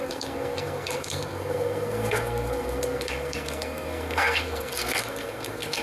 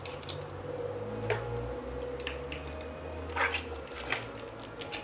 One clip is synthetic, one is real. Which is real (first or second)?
second